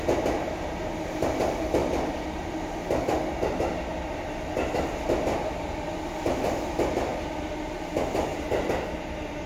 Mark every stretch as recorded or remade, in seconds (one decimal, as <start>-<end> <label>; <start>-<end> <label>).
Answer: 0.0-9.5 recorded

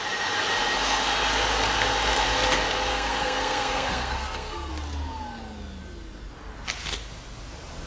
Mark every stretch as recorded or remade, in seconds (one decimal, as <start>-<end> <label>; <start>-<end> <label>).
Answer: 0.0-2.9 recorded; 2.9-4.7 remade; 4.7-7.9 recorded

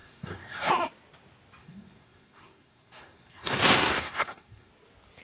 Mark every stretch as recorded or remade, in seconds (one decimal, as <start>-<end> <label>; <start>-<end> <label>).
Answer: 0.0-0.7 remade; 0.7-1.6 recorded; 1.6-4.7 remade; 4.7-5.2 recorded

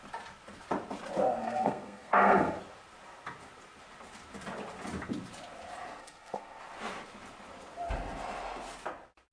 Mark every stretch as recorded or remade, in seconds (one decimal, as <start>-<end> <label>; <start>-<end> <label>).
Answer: 0.0-1.4 recorded; 1.4-2.6 remade; 2.6-6.0 recorded; 6.0-6.6 remade; 6.6-9.3 recorded